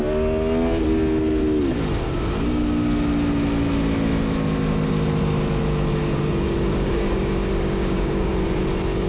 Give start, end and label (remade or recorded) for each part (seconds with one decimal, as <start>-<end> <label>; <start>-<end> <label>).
0.0-6.0 recorded; 6.0-8.3 remade; 8.3-9.1 recorded